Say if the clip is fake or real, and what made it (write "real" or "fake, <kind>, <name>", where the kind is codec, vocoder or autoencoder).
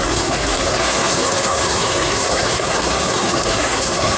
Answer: fake, codec, SNAC